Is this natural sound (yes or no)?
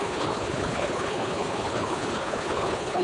no